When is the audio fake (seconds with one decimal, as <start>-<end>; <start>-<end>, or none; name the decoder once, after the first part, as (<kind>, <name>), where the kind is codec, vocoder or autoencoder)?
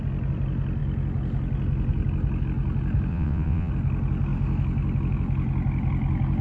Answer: 3.1-3.7 (vocoder, WaveNeXt)